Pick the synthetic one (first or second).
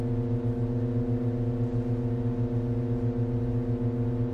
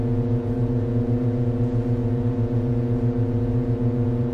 second